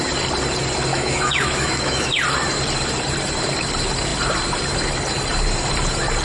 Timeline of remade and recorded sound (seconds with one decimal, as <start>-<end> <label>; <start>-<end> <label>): 0.0-0.9 recorded; 0.9-2.1 remade; 2.1-6.2 recorded